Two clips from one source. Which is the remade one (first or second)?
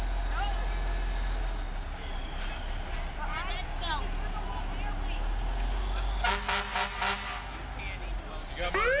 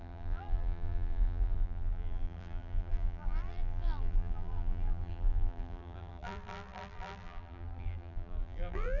second